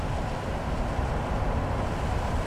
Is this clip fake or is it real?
real